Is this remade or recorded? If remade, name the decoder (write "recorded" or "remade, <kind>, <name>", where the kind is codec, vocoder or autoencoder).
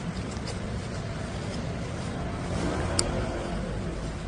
recorded